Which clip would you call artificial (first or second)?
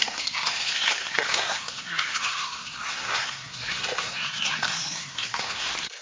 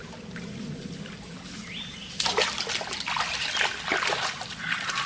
first